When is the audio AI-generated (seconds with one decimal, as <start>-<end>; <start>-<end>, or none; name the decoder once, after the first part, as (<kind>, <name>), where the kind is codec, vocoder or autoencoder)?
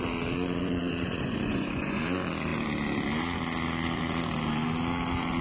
0.6-2.0 (vocoder, Vocos)